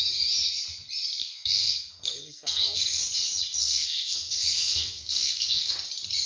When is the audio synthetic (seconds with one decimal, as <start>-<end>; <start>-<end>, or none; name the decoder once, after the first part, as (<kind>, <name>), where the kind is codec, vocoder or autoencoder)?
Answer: 1.2-3.0 (codec, SNAC); 3.6-5.7